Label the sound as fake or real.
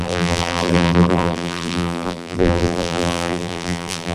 fake